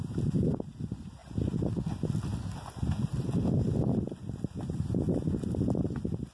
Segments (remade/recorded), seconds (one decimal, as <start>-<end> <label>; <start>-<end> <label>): 0.0-6.3 recorded